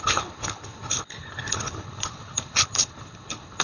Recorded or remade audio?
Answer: remade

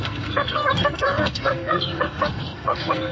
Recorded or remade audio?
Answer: remade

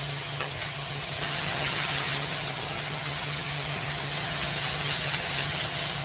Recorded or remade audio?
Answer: remade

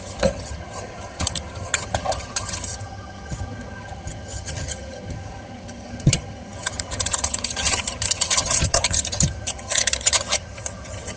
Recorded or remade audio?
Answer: remade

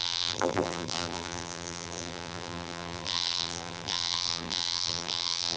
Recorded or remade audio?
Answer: remade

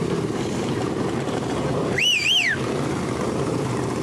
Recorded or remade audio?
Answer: remade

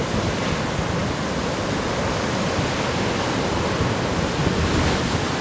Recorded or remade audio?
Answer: recorded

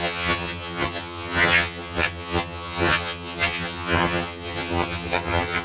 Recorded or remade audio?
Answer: remade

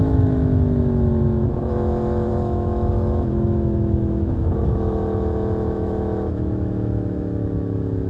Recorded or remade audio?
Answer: remade